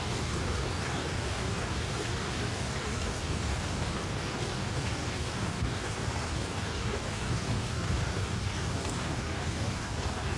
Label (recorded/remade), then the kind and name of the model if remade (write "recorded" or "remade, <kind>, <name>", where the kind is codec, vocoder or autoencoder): remade, codec, DAC